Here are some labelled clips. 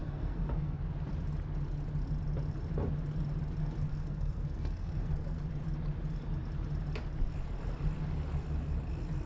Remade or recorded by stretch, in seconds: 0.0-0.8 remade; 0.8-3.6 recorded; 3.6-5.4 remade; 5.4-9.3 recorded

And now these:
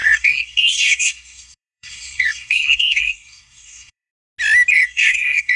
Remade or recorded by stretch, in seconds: 0.0-4.1 remade; 4.1-4.7 recorded; 4.7-5.6 remade

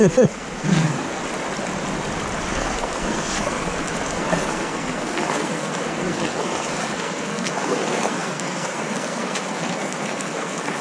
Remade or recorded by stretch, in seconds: 0.0-1.2 remade; 1.2-2.5 recorded; 2.5-10.8 remade

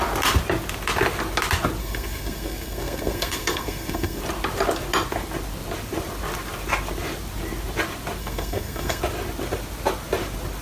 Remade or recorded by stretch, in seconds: 0.0-1.8 recorded; 1.8-4.2 remade; 4.2-8.2 recorded; 8.2-9.0 remade; 9.0-10.6 recorded

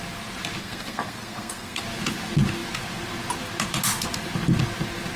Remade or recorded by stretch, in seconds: 0.0-0.6 recorded; 0.6-1.8 remade; 1.8-5.2 recorded

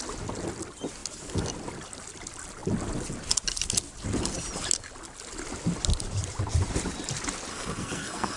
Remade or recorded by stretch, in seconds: 0.0-7.5 recorded; 7.5-8.4 remade

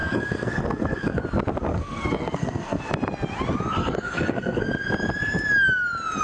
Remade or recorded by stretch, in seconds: 0.0-1.2 remade; 1.2-1.7 recorded; 1.7-2.8 remade; 2.8-3.8 recorded; 3.8-4.7 remade; 4.7-6.2 recorded

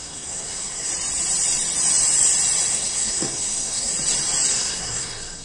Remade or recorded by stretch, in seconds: 0.0-0.9 remade; 0.9-2.7 recorded; 2.7-3.9 remade; 3.9-4.5 recorded; 4.5-5.4 remade